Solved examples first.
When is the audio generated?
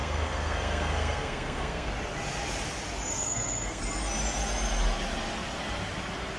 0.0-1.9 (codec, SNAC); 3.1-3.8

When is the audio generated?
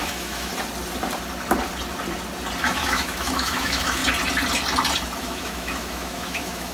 0.0-0.5 (autoencoder, DAC-VAE); 2.6-4.0; 5.2-6.7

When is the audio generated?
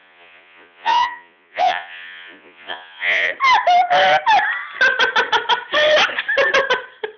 0.0-3.3 (vocoder, Vocos)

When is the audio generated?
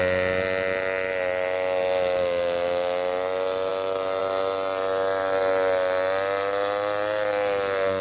none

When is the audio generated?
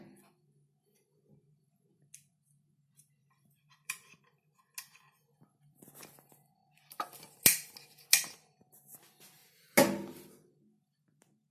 3.2-4.2 (vocoder, BigVGAN v2); 6.6-7.4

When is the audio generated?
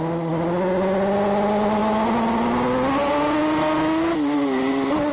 none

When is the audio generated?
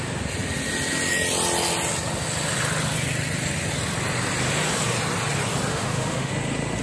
5.7-6.3 (autoencoder, DAC-VAE)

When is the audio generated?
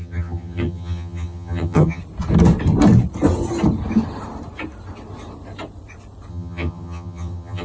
0.0-2.0 (vocoder, HiFi-GAN); 6.3-7.6